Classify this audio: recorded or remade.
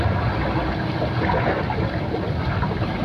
recorded